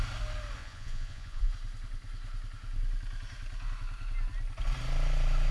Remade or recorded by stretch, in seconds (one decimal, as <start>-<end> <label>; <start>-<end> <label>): 0.0-0.6 recorded; 0.6-1.5 remade; 1.5-5.5 recorded